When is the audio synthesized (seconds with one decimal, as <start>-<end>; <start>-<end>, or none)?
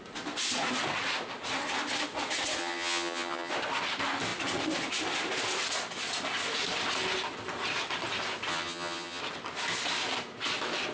2.6-3.5; 8.5-9.2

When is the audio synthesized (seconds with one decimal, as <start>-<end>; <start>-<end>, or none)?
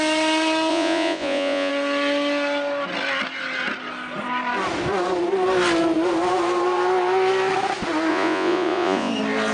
0.7-1.7; 8.1-9.1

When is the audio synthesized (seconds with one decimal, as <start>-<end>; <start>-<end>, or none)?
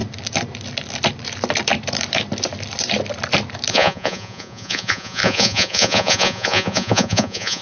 3.7-7.6